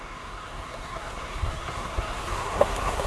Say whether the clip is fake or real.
fake